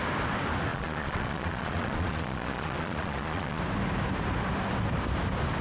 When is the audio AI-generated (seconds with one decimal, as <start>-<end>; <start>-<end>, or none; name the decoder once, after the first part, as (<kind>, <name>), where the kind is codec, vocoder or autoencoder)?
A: 0.7-3.6 (vocoder, Vocos)